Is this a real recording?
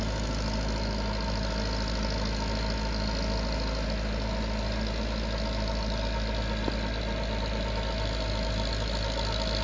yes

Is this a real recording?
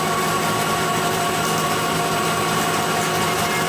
yes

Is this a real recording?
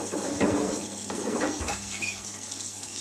no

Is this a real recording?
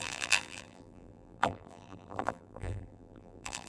no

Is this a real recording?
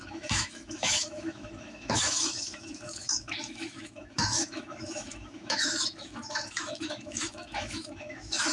no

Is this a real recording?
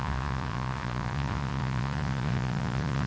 no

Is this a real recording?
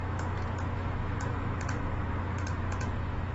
no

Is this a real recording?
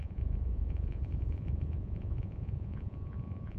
no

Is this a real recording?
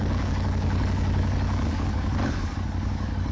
no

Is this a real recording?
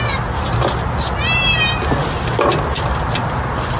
yes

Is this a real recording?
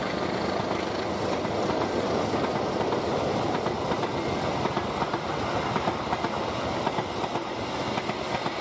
yes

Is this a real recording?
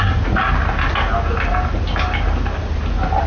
yes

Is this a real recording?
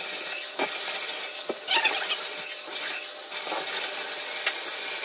yes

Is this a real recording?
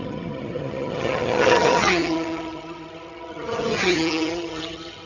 no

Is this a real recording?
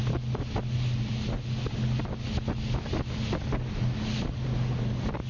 yes